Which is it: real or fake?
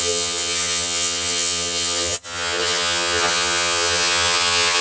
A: fake